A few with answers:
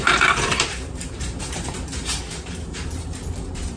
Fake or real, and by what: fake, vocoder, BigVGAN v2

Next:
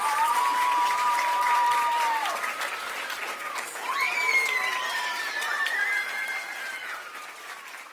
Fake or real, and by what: fake, vocoder, BigVGAN v2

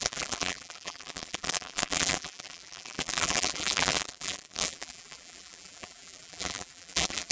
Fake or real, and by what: fake, vocoder, BigVGAN v2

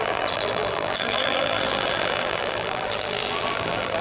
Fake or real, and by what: fake, vocoder, BigVGAN v2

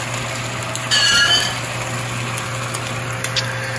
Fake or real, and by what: real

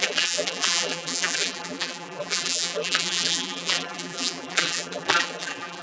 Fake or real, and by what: fake, vocoder, BigVGAN v2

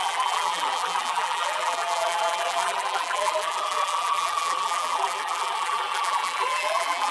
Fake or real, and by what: fake, vocoder, BigVGAN v2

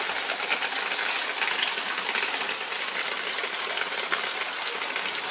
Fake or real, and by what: real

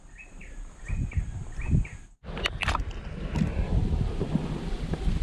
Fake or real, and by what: real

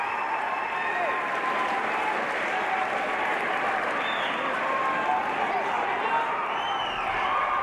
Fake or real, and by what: real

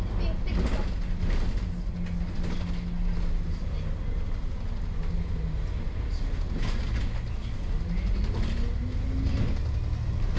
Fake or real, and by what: real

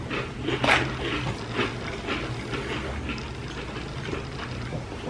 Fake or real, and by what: real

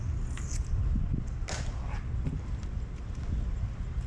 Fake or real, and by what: real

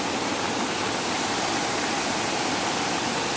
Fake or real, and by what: real